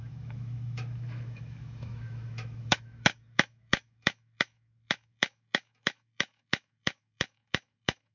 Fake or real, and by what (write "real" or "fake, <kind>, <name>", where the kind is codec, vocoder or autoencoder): fake, autoencoder, DAC-VAE